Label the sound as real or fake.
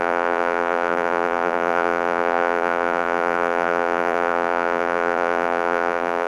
fake